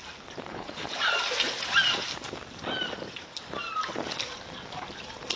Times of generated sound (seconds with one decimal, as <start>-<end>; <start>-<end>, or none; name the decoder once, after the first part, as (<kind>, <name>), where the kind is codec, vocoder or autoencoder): 0.5-1.0 (codec, HILCodec)